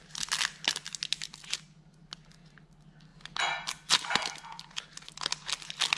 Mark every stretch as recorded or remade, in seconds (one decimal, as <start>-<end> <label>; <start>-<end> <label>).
0.0-6.0 recorded